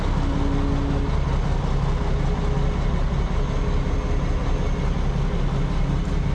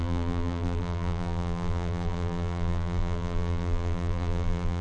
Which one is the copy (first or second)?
second